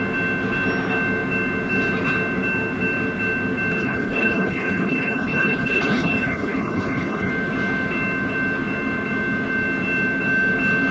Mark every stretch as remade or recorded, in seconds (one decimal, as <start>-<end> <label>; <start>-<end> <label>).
0.0-3.8 recorded; 3.8-7.3 remade; 7.3-10.9 recorded